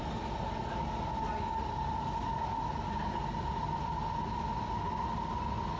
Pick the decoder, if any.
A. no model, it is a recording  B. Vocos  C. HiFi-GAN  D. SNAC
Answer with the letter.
A